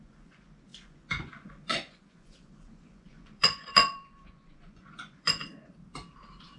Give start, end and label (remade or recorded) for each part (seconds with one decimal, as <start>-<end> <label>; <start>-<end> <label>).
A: 0.0-5.4 remade; 5.4-6.6 recorded